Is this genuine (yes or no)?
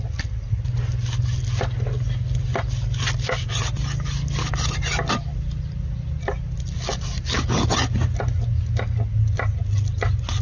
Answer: yes